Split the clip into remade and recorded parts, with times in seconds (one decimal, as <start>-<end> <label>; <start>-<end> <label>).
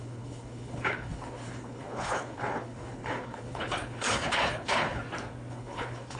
0.0-5.0 remade; 5.0-5.5 recorded; 5.5-6.2 remade